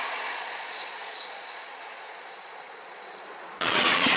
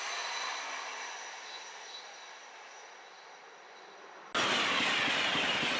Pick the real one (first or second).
second